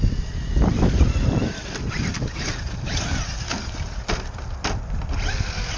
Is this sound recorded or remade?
recorded